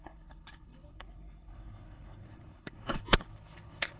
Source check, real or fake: fake